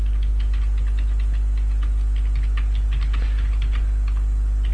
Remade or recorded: recorded